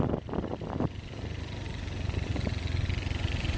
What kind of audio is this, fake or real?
real